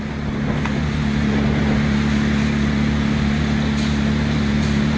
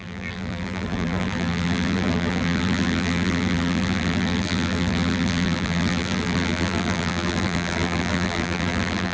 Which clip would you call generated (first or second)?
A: second